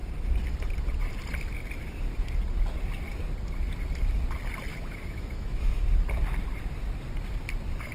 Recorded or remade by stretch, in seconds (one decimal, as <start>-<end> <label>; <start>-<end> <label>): 0.0-4.7 recorded; 4.7-5.8 remade; 5.8-7.9 recorded